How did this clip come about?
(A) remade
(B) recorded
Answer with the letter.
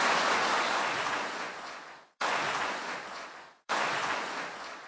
A